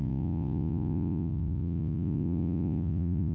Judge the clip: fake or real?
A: fake